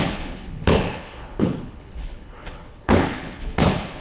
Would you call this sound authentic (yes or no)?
no